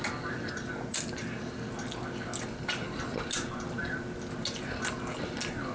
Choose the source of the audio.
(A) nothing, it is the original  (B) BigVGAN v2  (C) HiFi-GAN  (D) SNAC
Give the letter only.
A